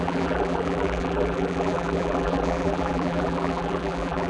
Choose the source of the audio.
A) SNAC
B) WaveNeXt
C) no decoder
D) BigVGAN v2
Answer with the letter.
D